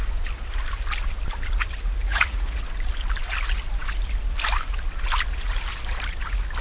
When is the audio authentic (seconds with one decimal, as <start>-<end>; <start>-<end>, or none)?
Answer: 0.0-2.1; 2.6-6.6